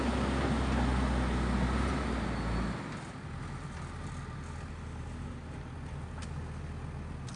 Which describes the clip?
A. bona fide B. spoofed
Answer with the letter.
A